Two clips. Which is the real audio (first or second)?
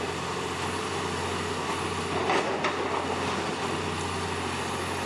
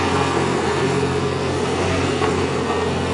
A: first